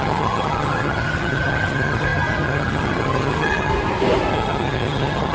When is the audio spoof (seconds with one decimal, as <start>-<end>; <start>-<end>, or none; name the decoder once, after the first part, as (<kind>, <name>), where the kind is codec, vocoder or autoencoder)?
0.0-3.7 (vocoder, HiFi-GAN); 4.3-5.3